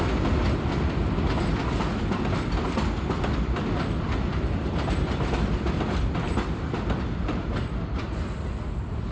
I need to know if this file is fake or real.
fake